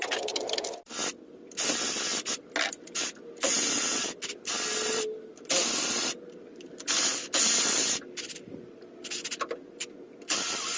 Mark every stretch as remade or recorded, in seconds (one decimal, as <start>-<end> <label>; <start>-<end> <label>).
0.0-10.8 recorded

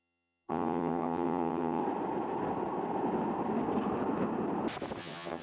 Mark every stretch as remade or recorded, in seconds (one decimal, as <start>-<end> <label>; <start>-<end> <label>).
0.0-1.8 remade; 1.8-5.0 recorded; 5.0-5.4 remade

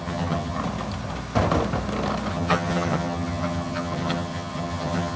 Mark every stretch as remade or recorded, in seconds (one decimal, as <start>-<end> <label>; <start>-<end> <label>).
0.0-0.6 remade; 0.6-2.3 recorded; 2.3-5.2 remade

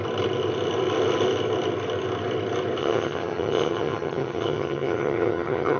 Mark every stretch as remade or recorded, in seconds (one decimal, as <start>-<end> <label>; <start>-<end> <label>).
0.0-2.8 recorded; 2.8-5.8 remade

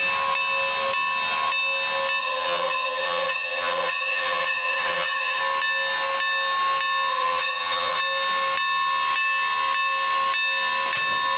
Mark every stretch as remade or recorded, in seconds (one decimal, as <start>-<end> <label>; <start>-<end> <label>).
0.0-2.2 recorded; 2.2-5.4 remade; 5.4-7.1 recorded; 7.1-8.0 remade; 8.0-11.4 recorded